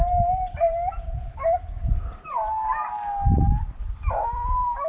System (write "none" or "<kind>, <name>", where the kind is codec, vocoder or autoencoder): none